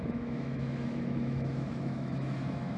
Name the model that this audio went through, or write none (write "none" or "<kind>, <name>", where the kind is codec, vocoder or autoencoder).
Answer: autoencoder, DAC-VAE